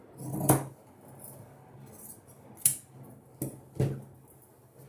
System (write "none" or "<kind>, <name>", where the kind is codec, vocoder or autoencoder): none